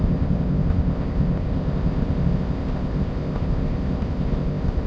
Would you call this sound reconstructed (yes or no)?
yes